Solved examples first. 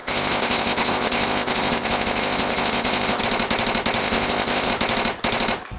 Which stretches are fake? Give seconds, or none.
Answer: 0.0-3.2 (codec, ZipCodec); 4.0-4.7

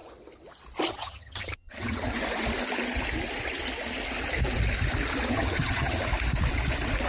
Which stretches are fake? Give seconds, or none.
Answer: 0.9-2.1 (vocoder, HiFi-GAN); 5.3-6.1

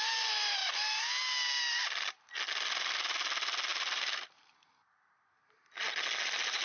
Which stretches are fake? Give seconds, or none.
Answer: 3.7-4.5 (vocoder, BigVGAN v2)